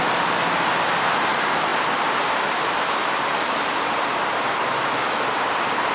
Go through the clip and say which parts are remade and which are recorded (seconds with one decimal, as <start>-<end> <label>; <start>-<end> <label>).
0.0-5.9 recorded